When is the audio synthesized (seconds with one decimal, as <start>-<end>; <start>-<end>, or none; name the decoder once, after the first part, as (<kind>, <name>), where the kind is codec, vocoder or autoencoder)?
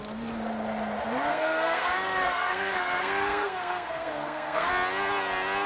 1.3-4.7 (codec, SNAC)